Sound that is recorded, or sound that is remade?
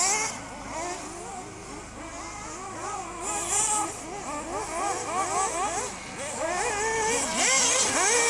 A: recorded